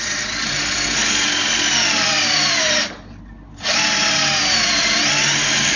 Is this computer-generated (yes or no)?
no